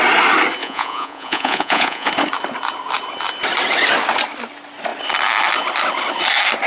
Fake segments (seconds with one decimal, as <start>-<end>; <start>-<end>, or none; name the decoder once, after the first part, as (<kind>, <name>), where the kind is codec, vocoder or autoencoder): 0.6-2.1 (vocoder, Vocos)